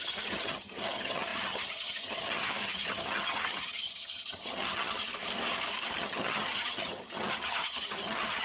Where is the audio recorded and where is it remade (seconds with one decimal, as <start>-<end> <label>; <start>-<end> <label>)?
0.0-5.1 remade; 5.1-6.0 recorded; 6.0-8.4 remade